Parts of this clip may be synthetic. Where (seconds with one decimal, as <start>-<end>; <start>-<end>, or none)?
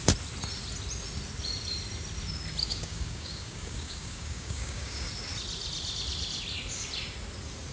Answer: 2.6-5.1